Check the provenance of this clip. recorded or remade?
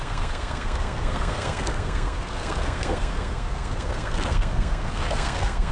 remade